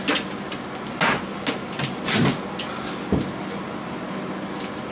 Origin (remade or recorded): recorded